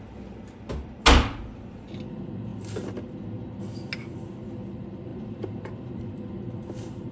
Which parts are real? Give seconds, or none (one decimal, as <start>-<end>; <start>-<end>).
0.0-5.1; 6.1-7.1